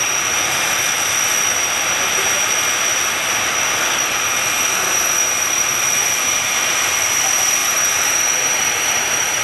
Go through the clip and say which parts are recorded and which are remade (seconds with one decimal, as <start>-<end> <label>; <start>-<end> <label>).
0.0-7.6 recorded; 7.6-9.4 remade